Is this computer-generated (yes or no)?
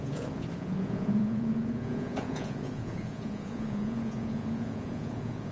yes